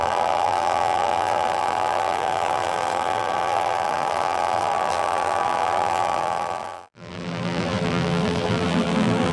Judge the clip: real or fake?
fake